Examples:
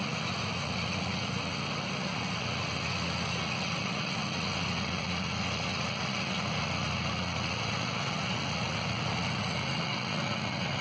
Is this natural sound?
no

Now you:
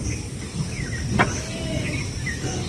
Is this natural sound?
yes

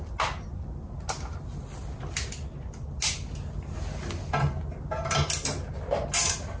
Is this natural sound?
yes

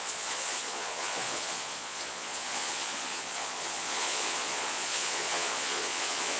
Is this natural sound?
no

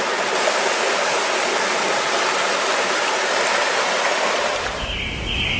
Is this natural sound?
yes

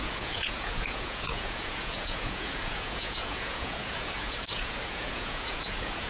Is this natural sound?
no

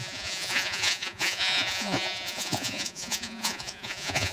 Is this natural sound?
no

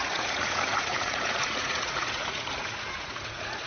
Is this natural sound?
no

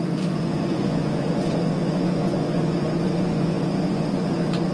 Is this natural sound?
no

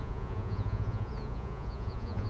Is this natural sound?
no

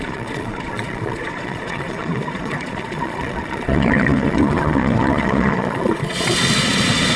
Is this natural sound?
no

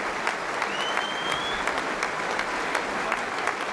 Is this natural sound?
yes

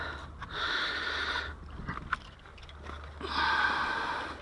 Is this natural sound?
yes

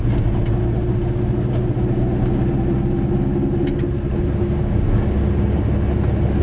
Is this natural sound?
yes